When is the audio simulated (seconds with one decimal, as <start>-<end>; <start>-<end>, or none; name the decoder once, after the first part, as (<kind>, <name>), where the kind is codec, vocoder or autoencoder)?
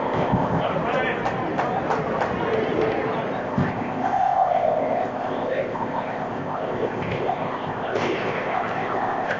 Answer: 0.0-0.7 (codec, ZipCodec); 3.3-9.4